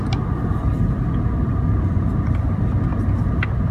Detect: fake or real real